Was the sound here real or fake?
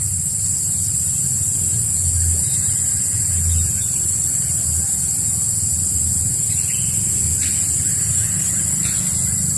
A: real